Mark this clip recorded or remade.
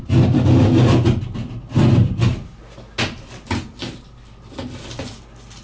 recorded